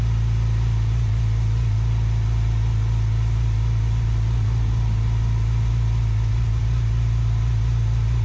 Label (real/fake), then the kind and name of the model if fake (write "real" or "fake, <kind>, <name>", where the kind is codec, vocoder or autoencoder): real